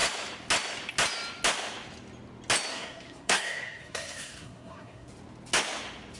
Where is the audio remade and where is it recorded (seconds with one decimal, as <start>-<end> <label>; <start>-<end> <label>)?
0.0-2.7 recorded; 2.7-5.1 remade; 5.1-6.2 recorded